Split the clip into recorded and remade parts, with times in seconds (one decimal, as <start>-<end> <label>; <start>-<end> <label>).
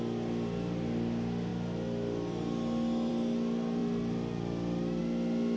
0.0-5.6 recorded